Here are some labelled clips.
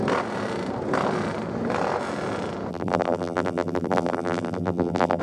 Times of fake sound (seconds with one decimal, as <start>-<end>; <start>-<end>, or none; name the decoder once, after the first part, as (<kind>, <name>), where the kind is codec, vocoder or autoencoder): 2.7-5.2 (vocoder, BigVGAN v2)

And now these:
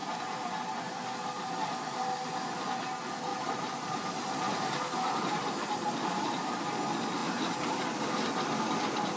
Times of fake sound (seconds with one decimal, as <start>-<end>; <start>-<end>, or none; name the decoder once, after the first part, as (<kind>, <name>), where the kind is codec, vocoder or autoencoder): 0.0-1.0 (vocoder, BigVGAN v2); 3.3-6.6

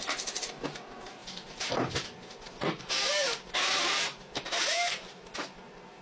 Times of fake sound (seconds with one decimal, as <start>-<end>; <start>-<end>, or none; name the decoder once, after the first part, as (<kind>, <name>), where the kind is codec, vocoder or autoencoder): 1.2-1.9 (vocoder, BigVGAN v2); 3.2-4.6